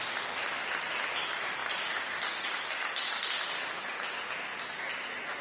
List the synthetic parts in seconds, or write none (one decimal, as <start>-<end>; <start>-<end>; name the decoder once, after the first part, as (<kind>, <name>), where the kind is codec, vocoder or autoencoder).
none